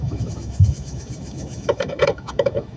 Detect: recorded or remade remade